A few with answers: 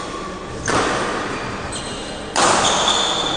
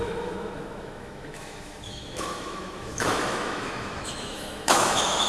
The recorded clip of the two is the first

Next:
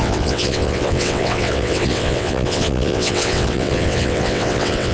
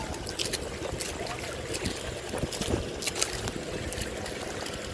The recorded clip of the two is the second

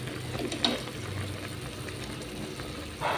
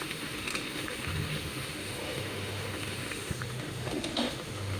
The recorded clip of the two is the first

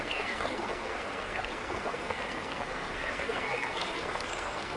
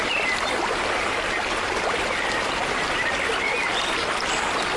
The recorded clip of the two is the second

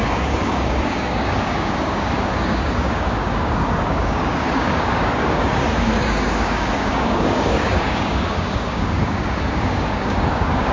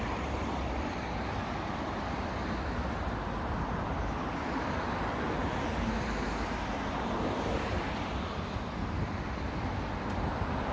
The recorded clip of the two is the second